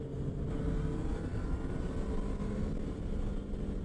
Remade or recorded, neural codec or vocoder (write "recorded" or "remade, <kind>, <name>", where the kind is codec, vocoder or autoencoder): recorded